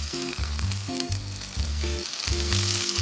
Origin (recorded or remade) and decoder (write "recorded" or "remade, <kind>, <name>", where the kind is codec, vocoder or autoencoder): remade, codec, SNAC